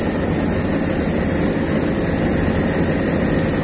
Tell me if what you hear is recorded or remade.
recorded